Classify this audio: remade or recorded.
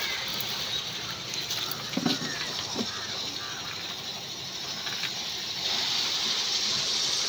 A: recorded